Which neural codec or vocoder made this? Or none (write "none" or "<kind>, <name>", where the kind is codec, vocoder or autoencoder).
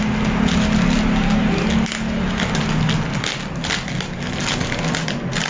none